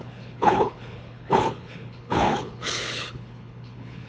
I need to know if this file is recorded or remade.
remade